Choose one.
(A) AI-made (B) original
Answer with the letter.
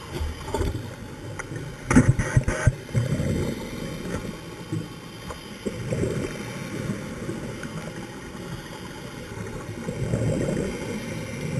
B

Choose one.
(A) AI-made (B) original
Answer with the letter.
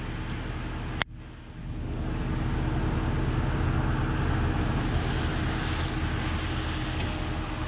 B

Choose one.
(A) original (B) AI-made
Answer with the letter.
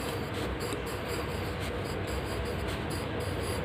A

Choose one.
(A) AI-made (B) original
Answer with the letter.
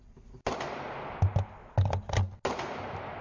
B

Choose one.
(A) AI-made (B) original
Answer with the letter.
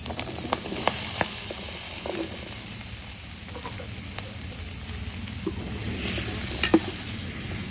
B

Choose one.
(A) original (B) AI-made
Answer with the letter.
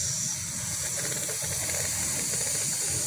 A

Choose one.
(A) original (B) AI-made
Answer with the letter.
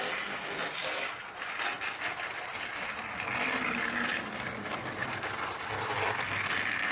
A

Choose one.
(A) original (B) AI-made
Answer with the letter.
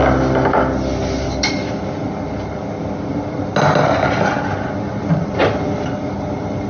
A